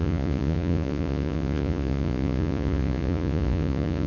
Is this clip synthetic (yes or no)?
yes